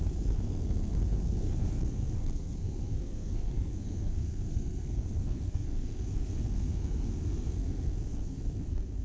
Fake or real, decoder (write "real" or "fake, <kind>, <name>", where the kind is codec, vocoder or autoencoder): fake, codec, SNAC